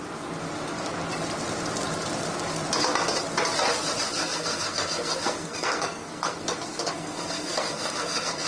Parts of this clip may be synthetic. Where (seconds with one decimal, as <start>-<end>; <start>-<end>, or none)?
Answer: 4.1-8.5

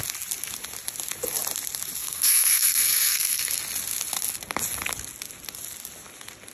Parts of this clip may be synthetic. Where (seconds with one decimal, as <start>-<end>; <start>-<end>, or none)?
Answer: 2.0-3.5

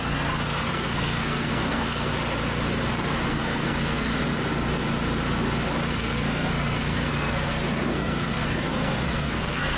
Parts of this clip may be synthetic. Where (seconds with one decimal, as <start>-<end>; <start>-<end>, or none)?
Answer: 0.0-2.1; 2.9-4.1; 5.9-9.8

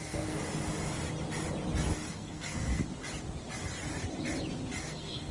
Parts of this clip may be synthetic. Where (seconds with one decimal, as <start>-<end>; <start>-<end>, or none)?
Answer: 0.0-0.4; 2.1-2.8; 4.8-5.3

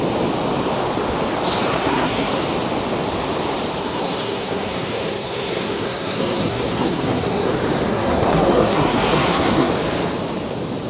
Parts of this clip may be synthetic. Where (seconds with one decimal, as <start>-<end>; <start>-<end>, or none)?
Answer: 1.7-2.4; 3.8-7.5; 7.9-9.7

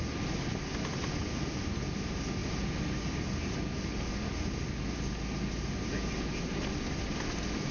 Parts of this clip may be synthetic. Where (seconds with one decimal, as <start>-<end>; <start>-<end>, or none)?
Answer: none

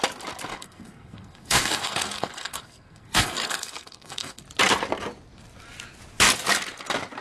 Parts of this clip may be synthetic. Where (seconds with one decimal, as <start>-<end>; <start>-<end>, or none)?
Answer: 0.5-4.4